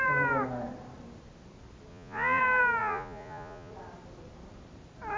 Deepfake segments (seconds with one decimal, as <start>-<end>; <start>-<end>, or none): 1.9-2.4; 2.8-3.7